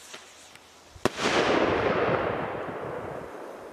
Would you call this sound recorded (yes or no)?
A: yes